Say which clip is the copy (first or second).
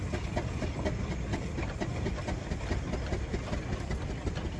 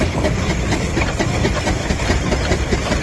second